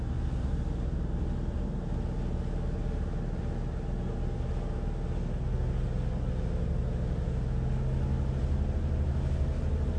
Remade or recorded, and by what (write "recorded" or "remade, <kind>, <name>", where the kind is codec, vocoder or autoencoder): recorded